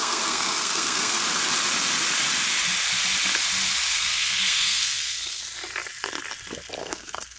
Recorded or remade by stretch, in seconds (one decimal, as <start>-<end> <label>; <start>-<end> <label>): 0.0-1.2 remade; 1.2-3.9 recorded; 3.9-5.4 remade; 5.4-6.8 recorded; 6.8-7.4 remade